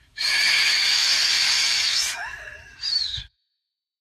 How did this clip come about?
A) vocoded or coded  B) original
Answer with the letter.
A